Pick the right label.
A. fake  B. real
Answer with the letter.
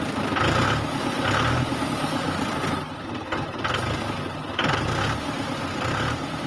B